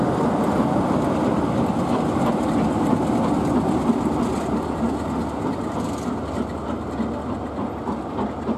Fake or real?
real